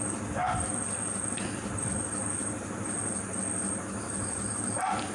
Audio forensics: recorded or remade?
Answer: recorded